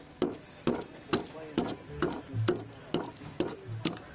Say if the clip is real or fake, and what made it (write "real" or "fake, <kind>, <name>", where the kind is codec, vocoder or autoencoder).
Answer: real